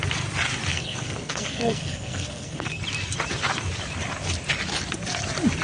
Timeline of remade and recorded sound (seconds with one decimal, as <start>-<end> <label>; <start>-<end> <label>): 0.0-0.7 recorded; 0.7-2.8 remade; 2.8-5.6 recorded

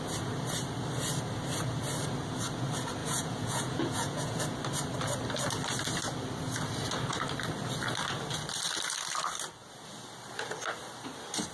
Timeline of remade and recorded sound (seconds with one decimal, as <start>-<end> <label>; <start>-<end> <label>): 0.0-3.0 recorded; 3.0-4.4 remade; 4.4-11.5 recorded

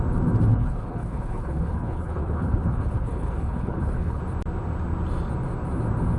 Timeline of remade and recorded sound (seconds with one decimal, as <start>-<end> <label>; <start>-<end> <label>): 0.0-0.5 recorded; 0.5-4.2 remade; 4.2-6.2 recorded

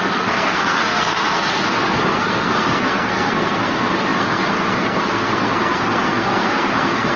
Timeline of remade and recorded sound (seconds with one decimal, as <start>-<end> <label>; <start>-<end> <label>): 0.0-7.2 remade

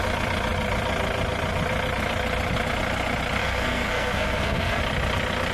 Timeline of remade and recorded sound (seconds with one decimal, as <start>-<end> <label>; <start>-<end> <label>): 0.0-3.4 recorded; 3.4-4.8 remade; 4.8-5.5 recorded